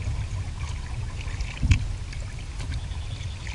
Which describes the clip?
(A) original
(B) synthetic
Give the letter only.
A